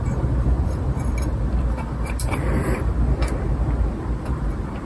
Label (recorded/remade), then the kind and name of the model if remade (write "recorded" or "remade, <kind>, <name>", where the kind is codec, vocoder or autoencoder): remade, vocoder, BigVGAN v2